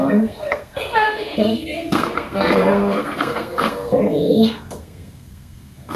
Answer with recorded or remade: remade